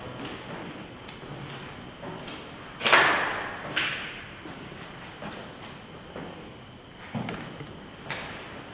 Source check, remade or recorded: recorded